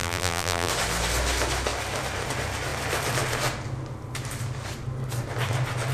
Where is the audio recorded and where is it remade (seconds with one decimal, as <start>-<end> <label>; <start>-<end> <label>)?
0.0-0.7 remade; 0.7-5.9 recorded